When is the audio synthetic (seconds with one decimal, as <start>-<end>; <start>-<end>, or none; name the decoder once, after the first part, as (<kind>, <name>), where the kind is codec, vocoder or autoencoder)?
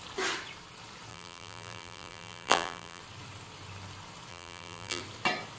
1.1-3.0 (vocoder, BigVGAN v2); 4.3-5.0